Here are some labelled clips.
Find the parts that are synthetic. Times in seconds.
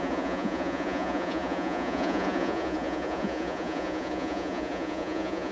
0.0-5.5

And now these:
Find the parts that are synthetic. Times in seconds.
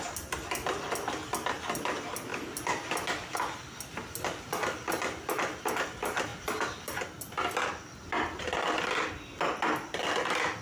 none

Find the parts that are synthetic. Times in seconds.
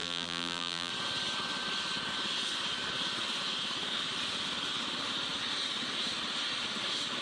0.0-0.9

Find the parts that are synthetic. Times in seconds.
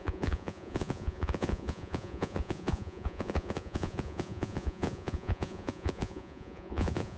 0.0-7.2